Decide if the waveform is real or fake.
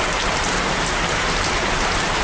fake